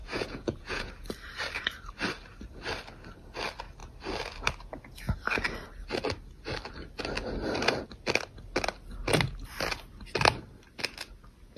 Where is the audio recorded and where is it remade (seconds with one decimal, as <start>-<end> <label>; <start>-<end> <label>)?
0.0-0.9 remade; 0.9-11.6 recorded